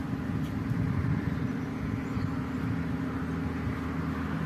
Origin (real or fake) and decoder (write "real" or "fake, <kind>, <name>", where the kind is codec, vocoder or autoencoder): real